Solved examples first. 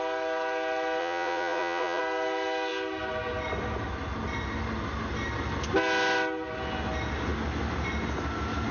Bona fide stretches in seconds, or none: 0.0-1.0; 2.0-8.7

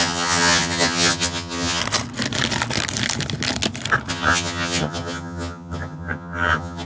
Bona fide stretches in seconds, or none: 1.8-4.1

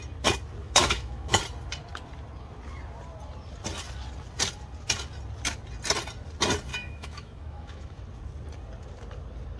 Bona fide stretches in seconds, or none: 0.0-0.6; 1.4-6.7; 8.0-9.6

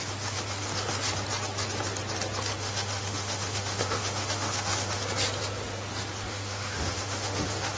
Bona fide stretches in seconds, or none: 0.0-2.6; 5.0-6.3

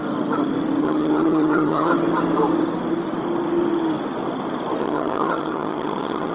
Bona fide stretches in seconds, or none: 0.0-0.8; 1.9-4.8

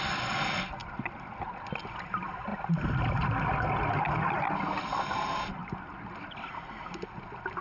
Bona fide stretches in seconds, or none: 0.0-7.6

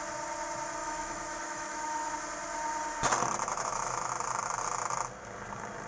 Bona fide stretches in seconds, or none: 0.0-0.8; 2.1-3.5; 4.1-5.9

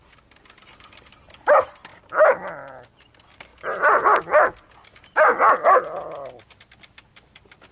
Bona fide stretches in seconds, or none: 0.0-7.7